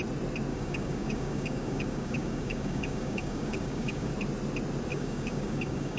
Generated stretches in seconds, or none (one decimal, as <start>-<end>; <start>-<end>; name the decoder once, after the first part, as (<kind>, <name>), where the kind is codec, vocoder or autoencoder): 0.5-4.1 (codec, DAC); 4.9-6.0